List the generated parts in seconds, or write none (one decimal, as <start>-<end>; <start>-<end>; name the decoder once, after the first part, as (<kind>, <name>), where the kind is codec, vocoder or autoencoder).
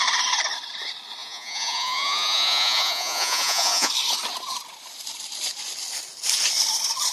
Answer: 1.2-3.9 (vocoder, Vocos)